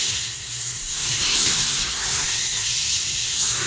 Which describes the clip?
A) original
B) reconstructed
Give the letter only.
B